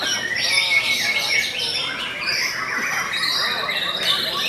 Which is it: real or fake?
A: fake